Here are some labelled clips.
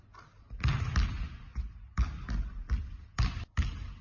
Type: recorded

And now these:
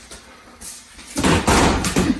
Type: remade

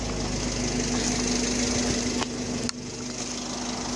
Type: recorded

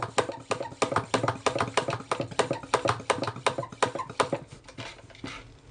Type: recorded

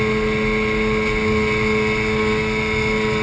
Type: recorded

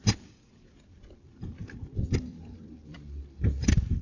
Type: recorded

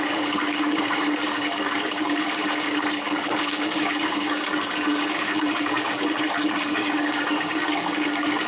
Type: remade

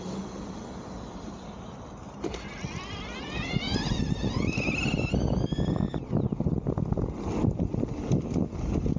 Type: recorded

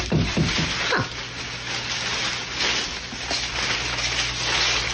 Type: recorded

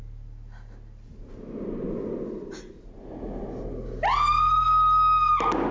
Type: recorded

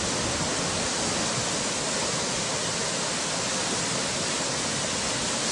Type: recorded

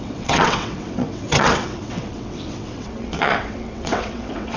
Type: remade